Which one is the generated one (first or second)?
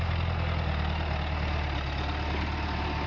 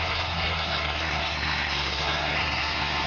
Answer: second